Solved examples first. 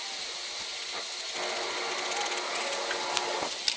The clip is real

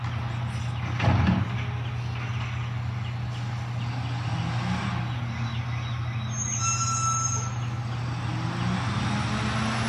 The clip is real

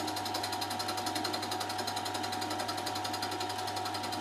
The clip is real